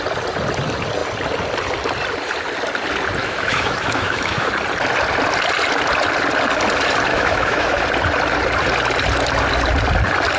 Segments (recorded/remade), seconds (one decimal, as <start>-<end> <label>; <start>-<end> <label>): 0.0-3.2 recorded; 3.2-4.5 remade; 4.5-7.1 recorded; 7.1-7.8 remade; 7.8-10.4 recorded